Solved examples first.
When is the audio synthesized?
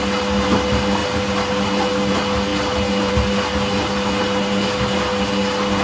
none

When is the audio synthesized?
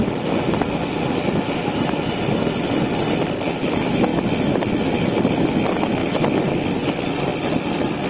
none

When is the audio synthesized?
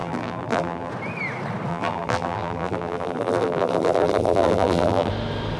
0.0-0.9 (vocoder, BigVGAN v2); 1.7-5.1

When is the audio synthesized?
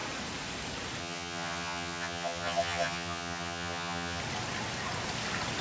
1.0-4.2 (vocoder, HiFi-GAN)